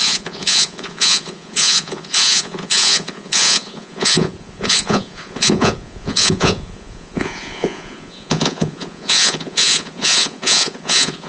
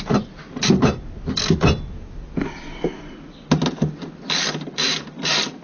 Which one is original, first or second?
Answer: second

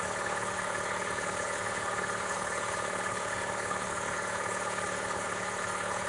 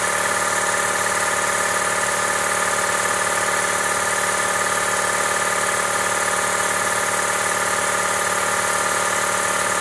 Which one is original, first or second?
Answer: second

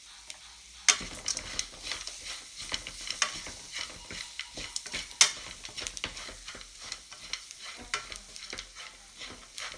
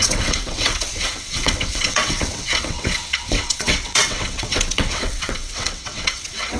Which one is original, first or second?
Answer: first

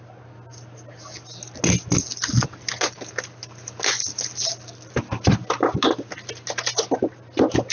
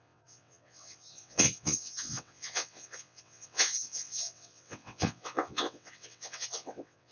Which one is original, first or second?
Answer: first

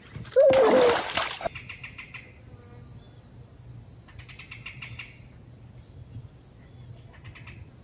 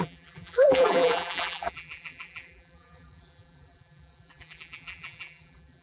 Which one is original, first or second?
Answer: first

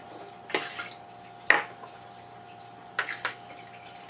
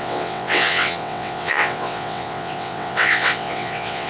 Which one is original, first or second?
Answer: first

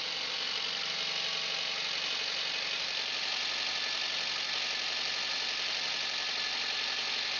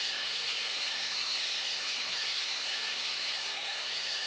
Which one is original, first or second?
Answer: first